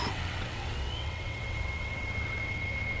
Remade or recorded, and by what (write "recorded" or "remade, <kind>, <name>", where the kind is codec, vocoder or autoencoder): remade, vocoder, WaveNeXt